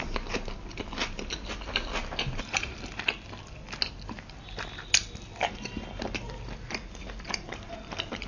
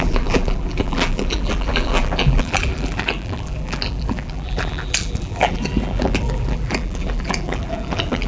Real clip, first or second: first